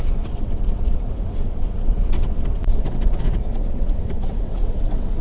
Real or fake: fake